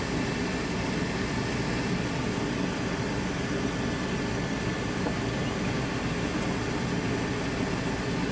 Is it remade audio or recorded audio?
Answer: recorded